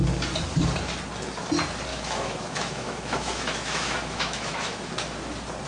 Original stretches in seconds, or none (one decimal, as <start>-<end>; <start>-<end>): 0.0-1.9; 4.9-5.7